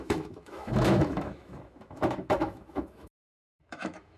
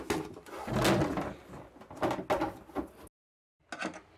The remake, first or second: first